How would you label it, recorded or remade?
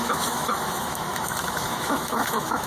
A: remade